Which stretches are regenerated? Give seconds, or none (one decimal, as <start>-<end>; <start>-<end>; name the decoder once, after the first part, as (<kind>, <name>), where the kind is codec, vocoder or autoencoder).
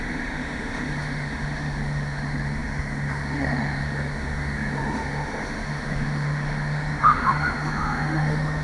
0.0-8.6 (autoencoder, DAC-VAE)